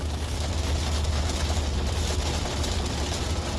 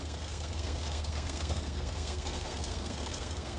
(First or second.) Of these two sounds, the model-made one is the second